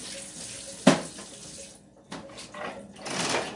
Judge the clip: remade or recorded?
recorded